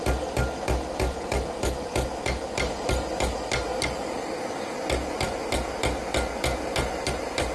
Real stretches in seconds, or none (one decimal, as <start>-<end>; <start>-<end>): 0.0-7.5